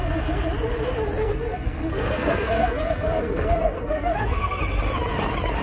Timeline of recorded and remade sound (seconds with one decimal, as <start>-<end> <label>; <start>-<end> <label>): 0.0-0.5 remade; 0.5-1.2 recorded; 1.2-4.6 remade; 4.6-5.6 recorded